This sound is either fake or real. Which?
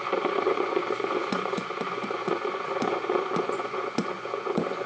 fake